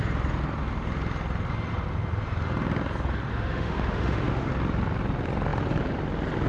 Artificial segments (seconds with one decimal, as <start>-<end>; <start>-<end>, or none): 3.3-4.5